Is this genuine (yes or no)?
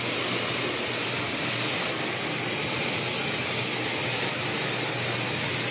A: yes